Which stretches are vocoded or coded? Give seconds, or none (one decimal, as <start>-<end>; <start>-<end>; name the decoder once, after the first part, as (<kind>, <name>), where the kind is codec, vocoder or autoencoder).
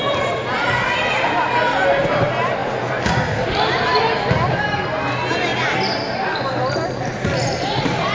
2.6-4.0 (vocoder, BigVGAN v2)